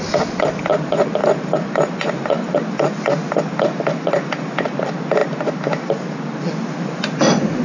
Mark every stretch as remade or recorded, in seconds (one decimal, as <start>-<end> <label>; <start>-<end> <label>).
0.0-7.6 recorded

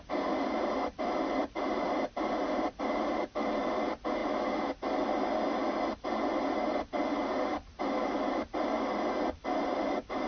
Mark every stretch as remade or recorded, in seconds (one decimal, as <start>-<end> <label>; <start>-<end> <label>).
0.0-4.2 remade; 4.2-5.9 recorded; 5.9-10.3 remade

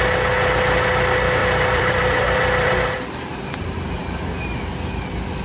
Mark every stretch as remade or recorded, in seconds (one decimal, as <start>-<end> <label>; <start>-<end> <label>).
0.0-1.4 recorded; 1.4-4.6 remade; 4.6-5.4 recorded

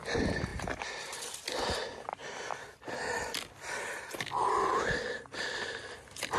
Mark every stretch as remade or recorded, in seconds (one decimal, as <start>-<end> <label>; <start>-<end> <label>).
0.0-6.4 recorded

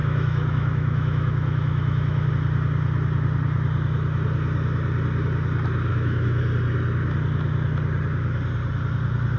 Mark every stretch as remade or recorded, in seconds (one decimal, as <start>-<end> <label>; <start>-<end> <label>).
0.0-2.3 remade; 2.3-5.9 recorded; 5.9-6.4 remade; 6.4-9.4 recorded